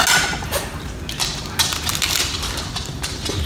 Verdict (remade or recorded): recorded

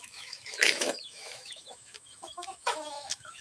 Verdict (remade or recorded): remade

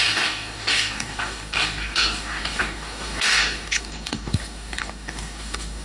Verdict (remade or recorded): remade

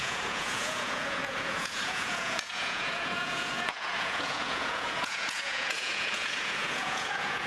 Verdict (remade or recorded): remade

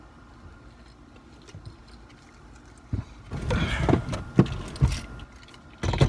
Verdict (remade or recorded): recorded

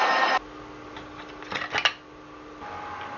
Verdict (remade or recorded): recorded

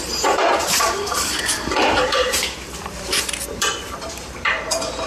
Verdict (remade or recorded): remade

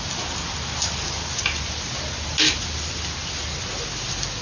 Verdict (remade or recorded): recorded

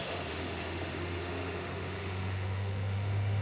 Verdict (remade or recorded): remade